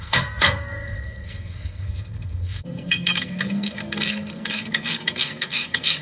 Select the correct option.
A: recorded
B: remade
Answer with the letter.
B